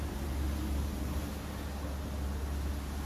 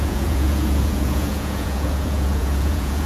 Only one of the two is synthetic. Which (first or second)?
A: second